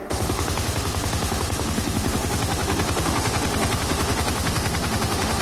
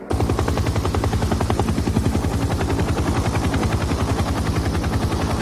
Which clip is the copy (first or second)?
first